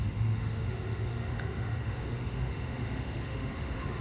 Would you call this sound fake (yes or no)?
yes